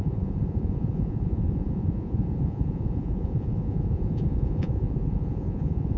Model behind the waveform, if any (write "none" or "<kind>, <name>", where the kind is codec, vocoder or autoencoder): vocoder, Vocos